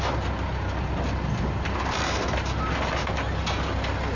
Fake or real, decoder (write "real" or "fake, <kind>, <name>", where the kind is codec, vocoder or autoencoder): real